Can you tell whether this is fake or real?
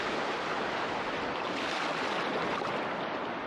real